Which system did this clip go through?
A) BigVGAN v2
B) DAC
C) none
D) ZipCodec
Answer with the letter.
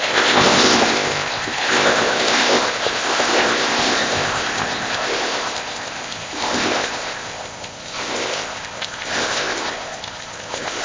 D